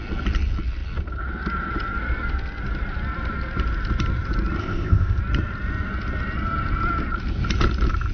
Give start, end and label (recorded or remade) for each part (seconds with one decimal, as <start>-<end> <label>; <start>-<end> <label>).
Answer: 0.0-4.6 recorded; 4.6-5.2 remade; 5.2-8.1 recorded